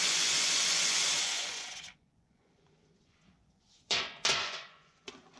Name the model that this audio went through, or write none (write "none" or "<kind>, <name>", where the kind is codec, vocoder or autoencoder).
vocoder, Vocos